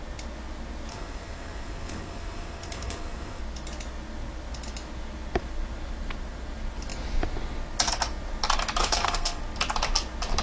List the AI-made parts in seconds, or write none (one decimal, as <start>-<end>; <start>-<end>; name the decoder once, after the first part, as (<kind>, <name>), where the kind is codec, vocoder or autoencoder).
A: 0.9-3.4 (codec, SNAC); 8.8-9.4